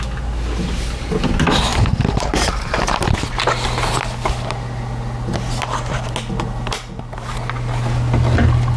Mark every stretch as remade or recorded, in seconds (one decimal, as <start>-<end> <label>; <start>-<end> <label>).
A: 0.0-1.7 recorded; 1.7-2.8 remade; 2.8-8.8 recorded